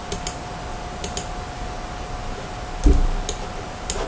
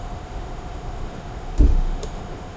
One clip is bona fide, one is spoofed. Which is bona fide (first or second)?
first